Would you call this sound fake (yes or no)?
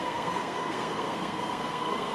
yes